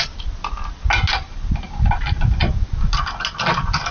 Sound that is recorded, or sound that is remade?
recorded